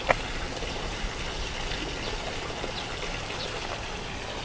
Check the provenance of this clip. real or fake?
real